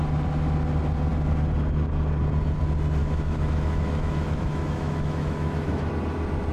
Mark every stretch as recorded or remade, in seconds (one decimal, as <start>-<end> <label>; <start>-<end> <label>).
0.0-3.0 recorded; 3.0-5.9 remade; 5.9-6.5 recorded